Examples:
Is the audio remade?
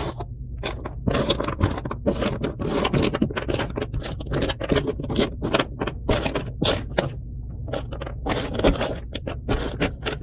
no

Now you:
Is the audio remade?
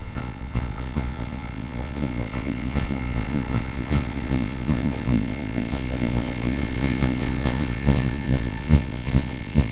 yes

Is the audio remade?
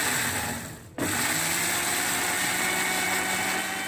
no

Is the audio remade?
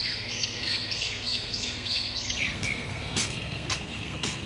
yes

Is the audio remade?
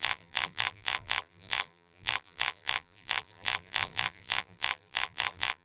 yes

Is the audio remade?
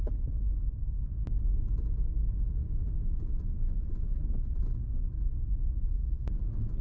no